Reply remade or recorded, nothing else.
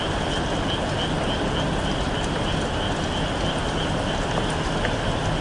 recorded